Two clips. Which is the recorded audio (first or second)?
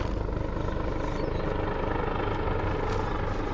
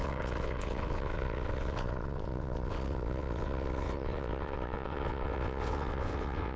first